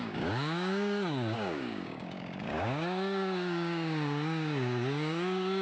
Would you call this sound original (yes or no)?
no